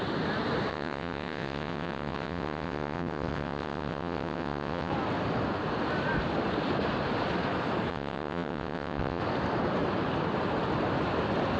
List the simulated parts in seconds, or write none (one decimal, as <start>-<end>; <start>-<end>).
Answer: 0.7-4.9; 7.9-9.2